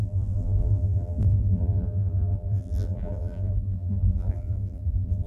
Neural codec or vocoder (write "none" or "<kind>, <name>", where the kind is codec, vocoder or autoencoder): vocoder, BigVGAN v2